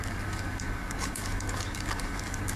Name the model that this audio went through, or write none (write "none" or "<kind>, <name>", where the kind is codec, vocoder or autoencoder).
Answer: codec, DAC